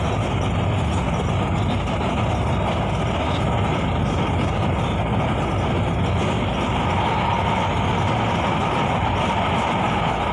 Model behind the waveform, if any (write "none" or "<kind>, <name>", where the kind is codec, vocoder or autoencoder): none